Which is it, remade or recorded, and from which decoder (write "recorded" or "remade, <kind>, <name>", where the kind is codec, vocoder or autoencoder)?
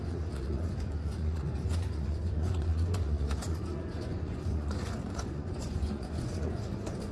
remade, vocoder, Vocos